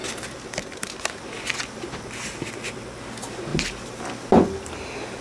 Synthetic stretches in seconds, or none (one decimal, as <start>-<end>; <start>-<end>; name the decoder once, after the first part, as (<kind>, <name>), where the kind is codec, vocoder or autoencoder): none